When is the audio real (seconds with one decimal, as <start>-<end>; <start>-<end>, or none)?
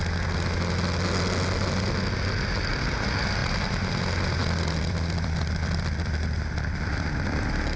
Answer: 0.0-4.4